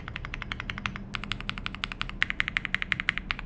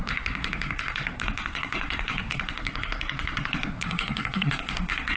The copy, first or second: second